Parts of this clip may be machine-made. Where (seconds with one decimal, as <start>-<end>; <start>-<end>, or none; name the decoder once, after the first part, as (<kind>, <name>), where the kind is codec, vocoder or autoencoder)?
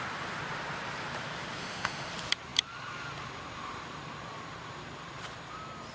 1.6-2.1 (autoencoder, DAC-VAE)